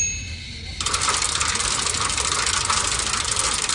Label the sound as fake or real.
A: real